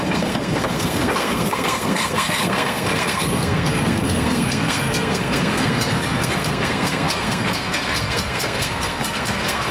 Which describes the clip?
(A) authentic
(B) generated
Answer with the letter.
B